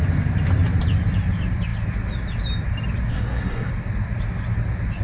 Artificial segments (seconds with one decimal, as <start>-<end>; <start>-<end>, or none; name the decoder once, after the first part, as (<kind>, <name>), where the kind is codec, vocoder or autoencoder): 3.1-3.7 (codec, SNAC)